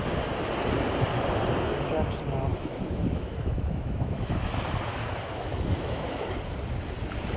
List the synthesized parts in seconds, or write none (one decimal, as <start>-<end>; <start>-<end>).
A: 2.5-4.4; 5.5-6.2